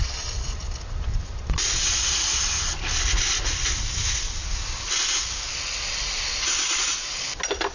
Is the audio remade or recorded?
recorded